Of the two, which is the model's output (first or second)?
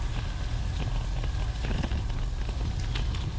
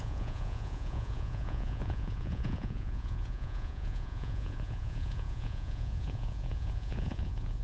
second